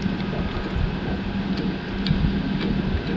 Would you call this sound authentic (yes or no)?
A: yes